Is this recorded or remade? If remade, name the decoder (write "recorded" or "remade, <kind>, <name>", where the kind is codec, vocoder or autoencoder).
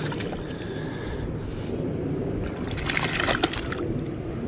recorded